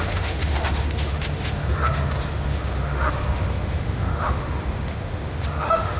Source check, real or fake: fake